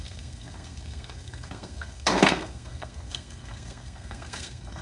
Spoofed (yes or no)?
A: yes